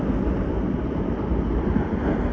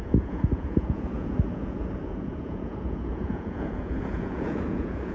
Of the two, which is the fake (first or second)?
second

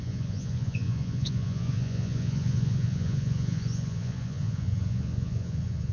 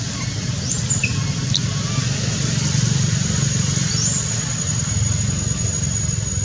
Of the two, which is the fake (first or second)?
first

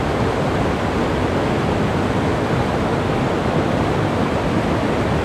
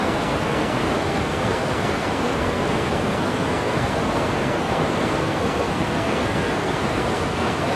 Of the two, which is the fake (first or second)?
second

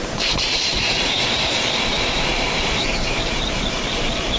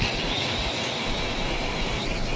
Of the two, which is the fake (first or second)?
first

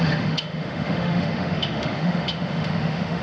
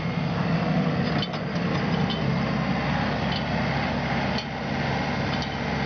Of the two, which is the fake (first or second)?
first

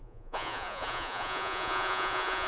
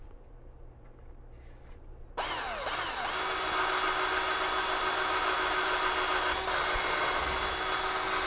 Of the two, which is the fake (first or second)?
first